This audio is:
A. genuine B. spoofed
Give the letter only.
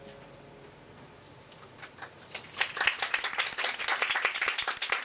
A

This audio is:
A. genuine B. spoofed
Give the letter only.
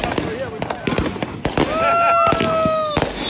A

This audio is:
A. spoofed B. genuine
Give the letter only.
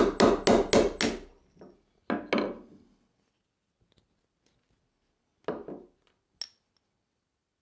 B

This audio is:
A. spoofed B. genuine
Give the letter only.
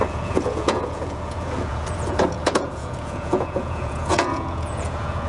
A